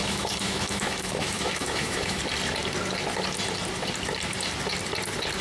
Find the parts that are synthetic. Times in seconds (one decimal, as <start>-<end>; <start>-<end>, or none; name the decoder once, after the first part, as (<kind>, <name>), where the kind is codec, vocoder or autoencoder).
0.0-2.2 (autoencoder, DAC-VAE)